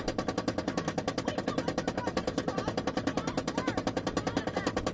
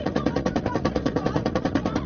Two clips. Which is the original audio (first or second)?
first